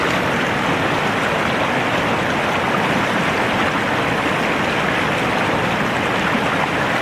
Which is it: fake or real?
real